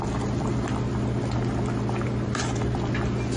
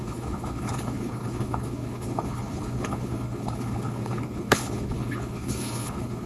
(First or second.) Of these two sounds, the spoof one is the second